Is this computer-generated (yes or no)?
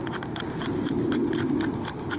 no